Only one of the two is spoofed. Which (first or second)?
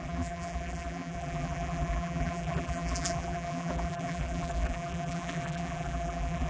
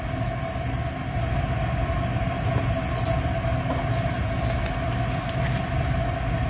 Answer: first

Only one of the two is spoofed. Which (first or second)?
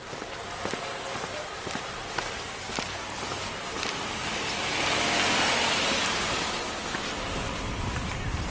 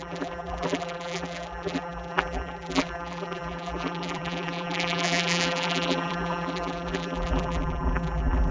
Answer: second